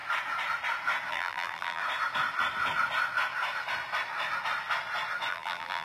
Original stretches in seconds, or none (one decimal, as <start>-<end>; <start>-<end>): 0.0-1.1; 1.8-5.3